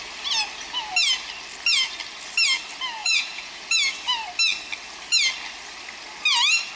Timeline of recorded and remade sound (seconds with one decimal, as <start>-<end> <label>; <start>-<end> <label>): 0.0-3.0 recorded; 3.0-3.6 remade; 3.6-6.8 recorded